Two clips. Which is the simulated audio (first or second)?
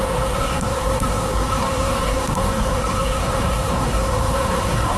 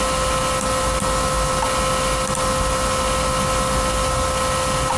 first